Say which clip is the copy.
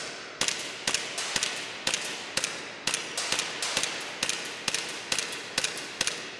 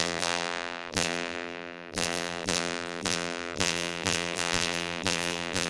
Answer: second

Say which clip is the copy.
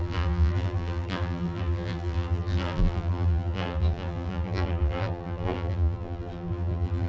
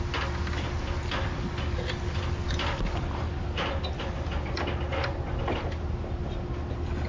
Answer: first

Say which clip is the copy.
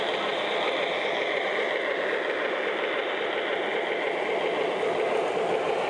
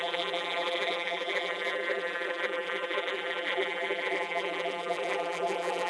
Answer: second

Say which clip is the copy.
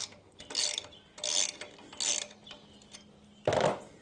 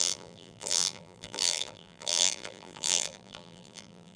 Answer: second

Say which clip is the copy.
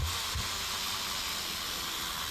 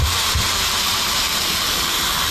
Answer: second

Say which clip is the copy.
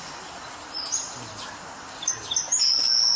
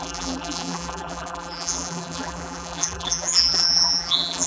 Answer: second